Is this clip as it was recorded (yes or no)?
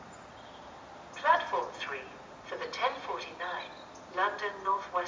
yes